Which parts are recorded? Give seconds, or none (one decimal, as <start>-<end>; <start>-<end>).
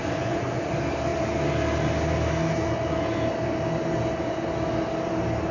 0.7-5.5